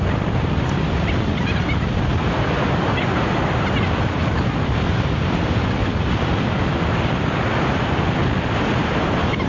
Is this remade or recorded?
recorded